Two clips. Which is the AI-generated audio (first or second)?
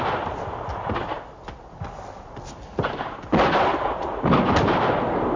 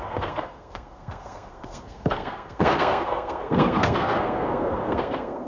second